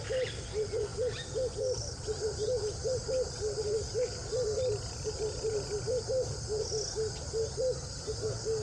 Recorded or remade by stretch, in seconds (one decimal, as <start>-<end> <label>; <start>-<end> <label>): 0.0-8.6 recorded

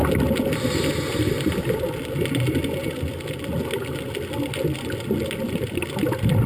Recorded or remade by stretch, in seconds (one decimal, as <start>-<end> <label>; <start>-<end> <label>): 0.0-6.5 recorded

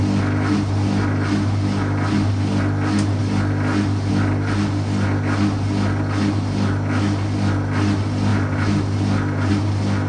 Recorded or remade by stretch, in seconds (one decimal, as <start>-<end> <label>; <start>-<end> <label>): 0.0-10.1 recorded

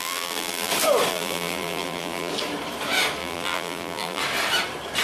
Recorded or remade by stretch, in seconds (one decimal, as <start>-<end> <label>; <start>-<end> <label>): 0.0-0.7 remade; 0.7-1.1 recorded; 1.1-2.3 remade; 2.3-3.2 recorded; 3.2-4.2 remade; 4.2-5.0 recorded

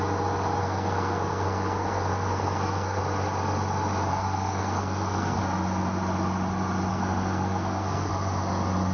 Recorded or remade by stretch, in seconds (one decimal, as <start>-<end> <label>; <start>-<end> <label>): 0.0-0.6 recorded; 0.6-3.0 remade; 3.0-4.1 recorded; 4.1-5.4 remade; 5.4-6.9 recorded; 6.9-8.1 remade; 8.1-8.9 recorded

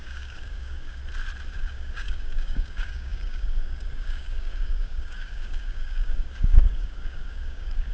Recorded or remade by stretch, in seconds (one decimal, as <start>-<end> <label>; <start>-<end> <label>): 0.0-1.0 remade; 1.0-1.5 recorded; 1.5-7.9 remade

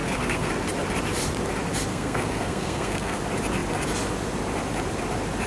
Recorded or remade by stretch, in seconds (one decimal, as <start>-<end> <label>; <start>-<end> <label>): 0.0-0.5 remade; 0.5-1.9 recorded; 1.9-3.2 remade; 3.2-5.5 recorded